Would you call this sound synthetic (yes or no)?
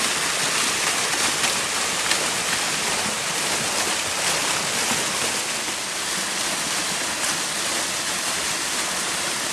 no